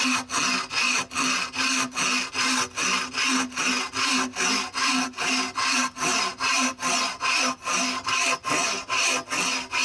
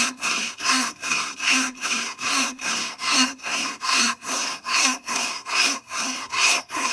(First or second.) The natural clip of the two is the first